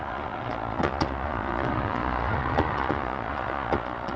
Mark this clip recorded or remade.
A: remade